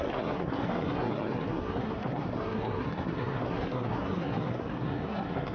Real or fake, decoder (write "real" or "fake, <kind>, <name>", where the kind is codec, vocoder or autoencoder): fake, codec, SNAC